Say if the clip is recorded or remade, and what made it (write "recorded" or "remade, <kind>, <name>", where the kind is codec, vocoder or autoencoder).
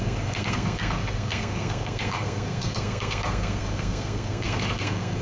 remade, codec, SNAC